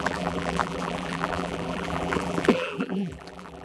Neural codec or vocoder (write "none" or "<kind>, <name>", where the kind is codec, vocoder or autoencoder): vocoder, BigVGAN v2